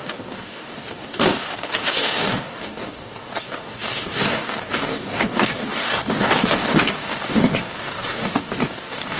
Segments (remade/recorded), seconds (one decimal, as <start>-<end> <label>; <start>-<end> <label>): 0.0-9.2 remade

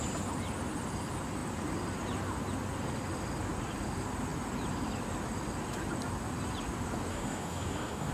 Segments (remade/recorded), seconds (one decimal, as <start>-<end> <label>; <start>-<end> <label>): 0.0-7.1 recorded; 7.1-8.1 remade

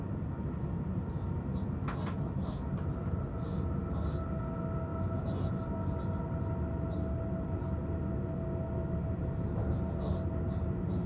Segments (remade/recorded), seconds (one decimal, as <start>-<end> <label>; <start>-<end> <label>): 0.0-11.1 recorded

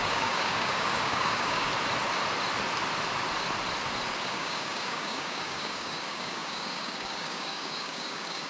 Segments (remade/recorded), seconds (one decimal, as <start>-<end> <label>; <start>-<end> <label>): 0.0-1.7 remade; 1.7-4.2 recorded; 4.2-8.5 remade

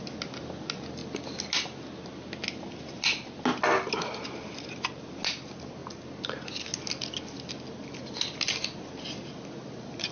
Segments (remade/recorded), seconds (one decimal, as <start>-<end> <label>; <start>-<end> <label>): 0.0-10.1 recorded

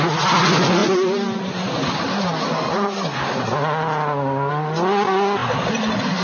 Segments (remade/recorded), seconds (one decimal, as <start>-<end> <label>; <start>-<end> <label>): 0.0-6.2 recorded

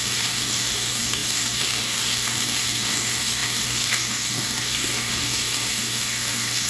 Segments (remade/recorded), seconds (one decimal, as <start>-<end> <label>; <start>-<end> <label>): 0.0-6.7 remade